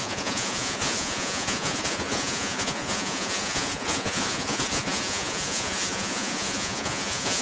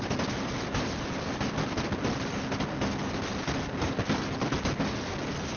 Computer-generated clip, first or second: first